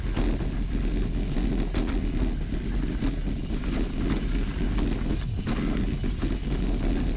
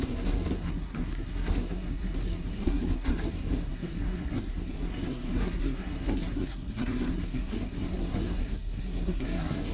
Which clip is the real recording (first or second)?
first